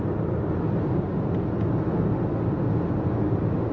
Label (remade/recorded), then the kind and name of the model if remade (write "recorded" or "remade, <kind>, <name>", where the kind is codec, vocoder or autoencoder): recorded